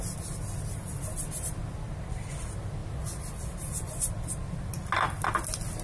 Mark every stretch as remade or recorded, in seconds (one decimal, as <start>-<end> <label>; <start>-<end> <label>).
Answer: 0.0-5.8 recorded